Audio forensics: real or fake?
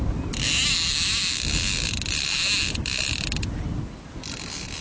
real